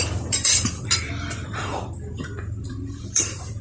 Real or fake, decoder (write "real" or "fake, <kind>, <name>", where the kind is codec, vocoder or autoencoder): fake, vocoder, BigVGAN v2